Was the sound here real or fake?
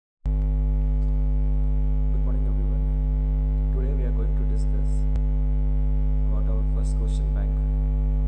real